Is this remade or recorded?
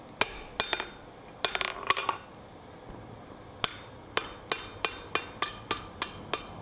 recorded